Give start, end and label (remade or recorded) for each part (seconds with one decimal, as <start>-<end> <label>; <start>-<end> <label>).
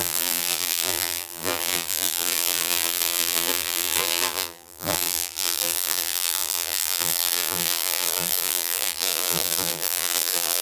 0.0-10.6 remade